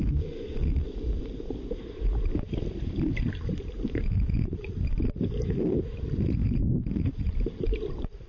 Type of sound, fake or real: fake